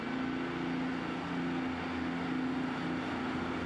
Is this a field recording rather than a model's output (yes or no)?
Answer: yes